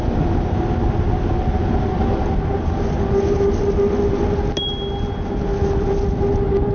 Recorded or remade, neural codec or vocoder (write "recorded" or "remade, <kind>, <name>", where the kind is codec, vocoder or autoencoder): recorded